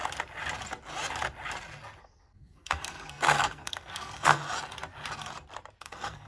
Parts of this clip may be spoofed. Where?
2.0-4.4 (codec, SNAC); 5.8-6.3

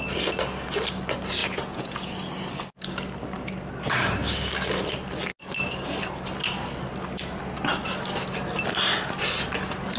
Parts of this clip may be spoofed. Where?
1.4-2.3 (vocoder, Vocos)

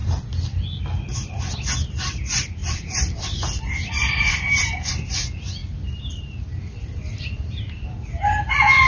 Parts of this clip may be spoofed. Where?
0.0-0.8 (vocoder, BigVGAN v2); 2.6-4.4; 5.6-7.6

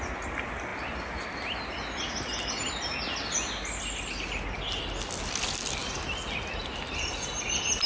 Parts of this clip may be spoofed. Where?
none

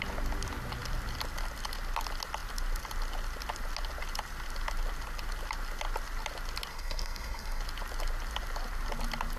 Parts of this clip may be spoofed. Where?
6.7-7.6 (codec, SNAC)

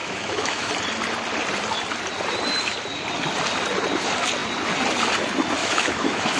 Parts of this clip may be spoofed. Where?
0.0-0.7 (autoencoder, DAC-VAE); 5.6-6.4

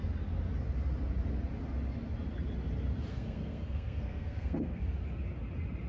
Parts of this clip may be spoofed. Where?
3.1-4.8 (codec, SNAC)

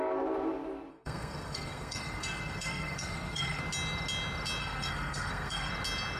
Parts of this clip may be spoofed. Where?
0.9-3.6 (codec, SNAC); 4.6-5.7